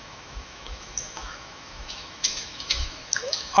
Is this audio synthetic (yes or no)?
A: yes